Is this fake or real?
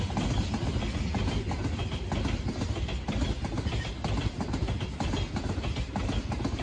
real